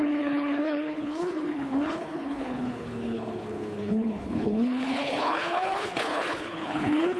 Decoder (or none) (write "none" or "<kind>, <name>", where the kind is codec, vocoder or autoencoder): codec, HILCodec